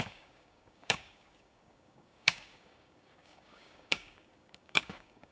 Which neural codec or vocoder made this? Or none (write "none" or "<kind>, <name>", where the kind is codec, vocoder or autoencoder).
codec, DAC